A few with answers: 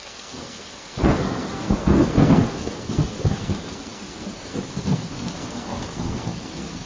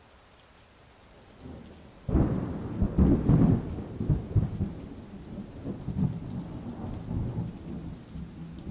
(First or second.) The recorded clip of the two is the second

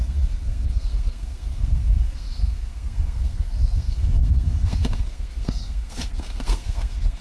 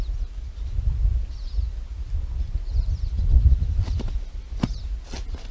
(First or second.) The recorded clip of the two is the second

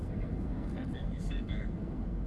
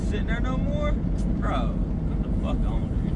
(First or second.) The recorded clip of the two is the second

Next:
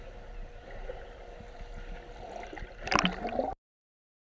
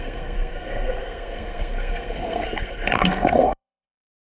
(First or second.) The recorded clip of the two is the first